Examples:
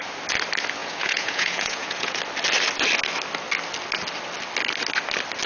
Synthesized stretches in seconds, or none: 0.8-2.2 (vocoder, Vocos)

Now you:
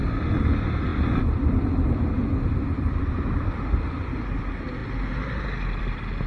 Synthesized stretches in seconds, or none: none

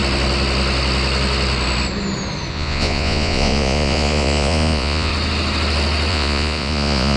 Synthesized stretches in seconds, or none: 2.5-5.1 (vocoder, Vocos); 6.1-7.2